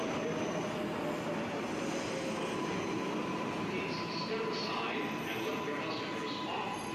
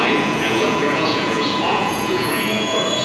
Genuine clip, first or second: first